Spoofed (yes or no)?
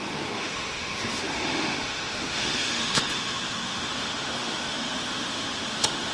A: yes